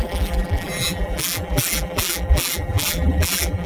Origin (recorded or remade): remade